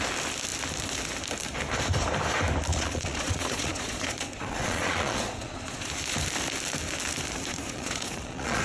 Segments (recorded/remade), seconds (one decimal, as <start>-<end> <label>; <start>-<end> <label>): 0.0-2.7 recorded; 2.7-5.9 remade; 5.9-7.5 recorded; 7.5-8.6 remade

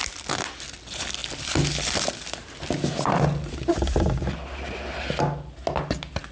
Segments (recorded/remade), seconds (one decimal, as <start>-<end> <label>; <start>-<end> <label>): 0.0-6.3 recorded

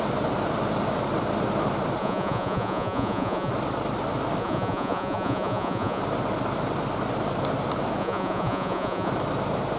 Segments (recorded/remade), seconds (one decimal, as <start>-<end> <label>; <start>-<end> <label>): 0.0-2.0 recorded; 2.0-3.5 remade; 3.5-4.4 recorded; 4.4-6.0 remade; 6.0-8.0 recorded; 8.0-9.1 remade; 9.1-9.8 recorded

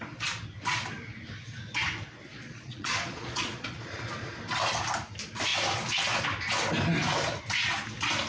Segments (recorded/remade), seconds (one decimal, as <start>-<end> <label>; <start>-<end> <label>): 0.0-2.3 recorded; 2.3-3.9 remade; 3.9-8.3 recorded

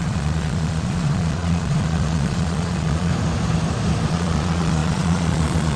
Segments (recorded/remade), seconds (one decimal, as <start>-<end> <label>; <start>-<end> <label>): 0.0-3.1 remade; 3.1-4.1 recorded; 4.1-5.8 remade